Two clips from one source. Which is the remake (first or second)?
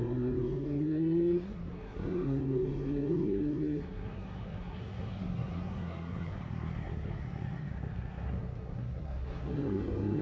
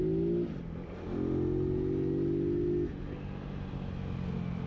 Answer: first